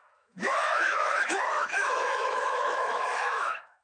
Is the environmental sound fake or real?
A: fake